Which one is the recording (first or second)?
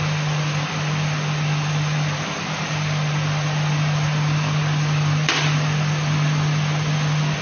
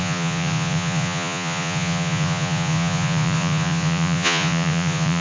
first